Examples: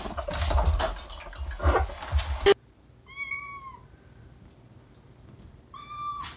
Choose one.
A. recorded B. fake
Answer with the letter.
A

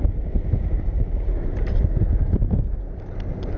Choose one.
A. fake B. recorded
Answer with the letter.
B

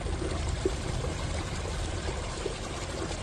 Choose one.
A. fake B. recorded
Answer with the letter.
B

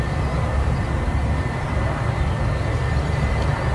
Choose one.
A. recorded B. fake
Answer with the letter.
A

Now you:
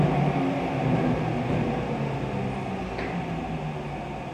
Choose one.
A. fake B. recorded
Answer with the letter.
B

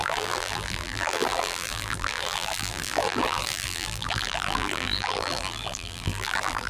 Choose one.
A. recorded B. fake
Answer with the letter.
B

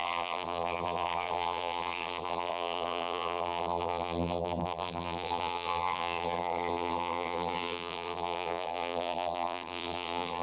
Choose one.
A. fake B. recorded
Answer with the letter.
A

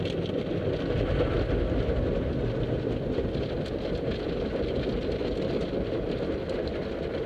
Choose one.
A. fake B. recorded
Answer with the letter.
B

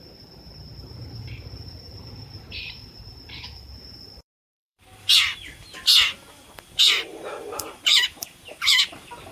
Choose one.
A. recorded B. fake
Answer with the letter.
B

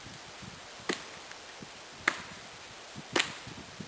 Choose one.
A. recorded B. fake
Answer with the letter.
B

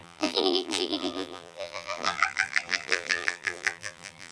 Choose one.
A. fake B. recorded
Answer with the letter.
A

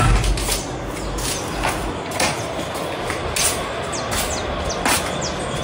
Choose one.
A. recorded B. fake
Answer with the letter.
A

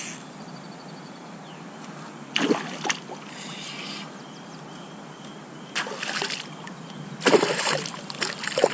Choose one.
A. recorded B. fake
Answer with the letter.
A